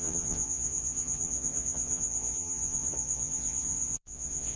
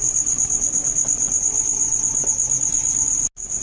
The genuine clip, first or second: second